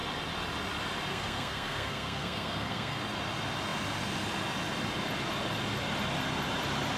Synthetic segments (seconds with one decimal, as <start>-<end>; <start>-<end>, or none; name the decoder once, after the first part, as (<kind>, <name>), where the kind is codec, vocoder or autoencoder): 1.1-3.0 (codec, SNAC)

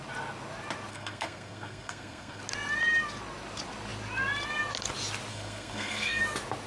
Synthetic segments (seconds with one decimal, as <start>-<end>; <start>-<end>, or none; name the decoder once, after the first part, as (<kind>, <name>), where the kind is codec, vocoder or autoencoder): 0.9-2.4 (codec, SNAC); 5.3-6.2

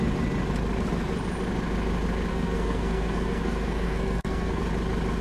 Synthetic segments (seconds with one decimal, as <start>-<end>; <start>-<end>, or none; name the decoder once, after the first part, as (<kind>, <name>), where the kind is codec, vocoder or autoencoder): 2.3-4.6 (codec, SNAC)

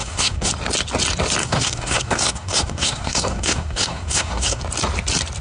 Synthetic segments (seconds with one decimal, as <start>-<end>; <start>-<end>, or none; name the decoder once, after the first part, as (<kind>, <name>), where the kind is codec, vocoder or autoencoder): 0.0-0.5 (codec, SNAC); 1.4-4.6